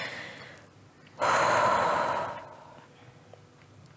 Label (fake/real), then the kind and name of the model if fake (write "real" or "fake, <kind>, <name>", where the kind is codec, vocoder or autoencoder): real